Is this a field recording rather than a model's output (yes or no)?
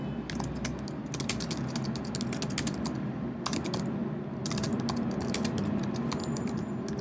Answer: yes